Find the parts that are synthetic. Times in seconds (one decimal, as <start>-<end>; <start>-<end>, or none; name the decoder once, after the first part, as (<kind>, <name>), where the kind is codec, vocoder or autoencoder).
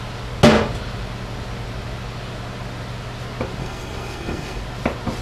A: 3.6-4.6 (codec, SNAC)